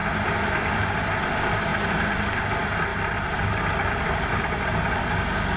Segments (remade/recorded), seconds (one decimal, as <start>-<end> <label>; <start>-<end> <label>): 0.0-1.7 recorded; 1.7-2.4 remade; 2.4-2.9 recorded; 2.9-3.5 remade; 3.5-5.6 recorded